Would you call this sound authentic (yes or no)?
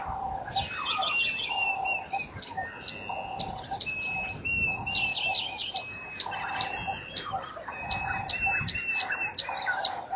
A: yes